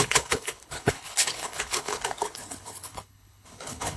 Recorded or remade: remade